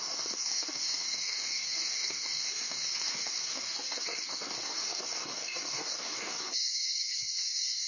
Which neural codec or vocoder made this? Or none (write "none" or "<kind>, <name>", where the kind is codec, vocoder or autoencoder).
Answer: codec, DAC